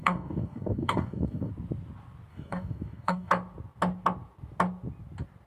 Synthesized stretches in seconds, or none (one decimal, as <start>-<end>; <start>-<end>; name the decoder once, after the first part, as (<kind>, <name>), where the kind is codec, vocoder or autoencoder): 0.0-1.5 (codec, DAC); 2.3-3.3